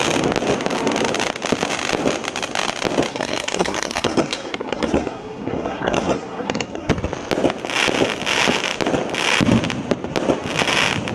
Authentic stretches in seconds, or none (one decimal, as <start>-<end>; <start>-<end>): 0.0-3.1; 6.9-11.1